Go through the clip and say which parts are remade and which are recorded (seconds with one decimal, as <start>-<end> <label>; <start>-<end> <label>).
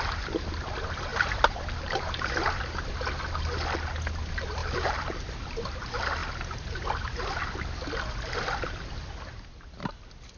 0.0-1.1 recorded; 1.1-2.6 remade; 2.6-10.4 recorded